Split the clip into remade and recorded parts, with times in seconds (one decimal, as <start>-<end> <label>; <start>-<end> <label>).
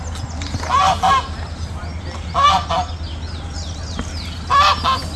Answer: 0.0-5.2 recorded